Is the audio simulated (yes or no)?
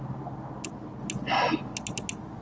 no